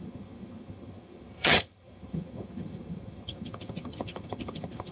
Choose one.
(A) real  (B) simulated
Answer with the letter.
B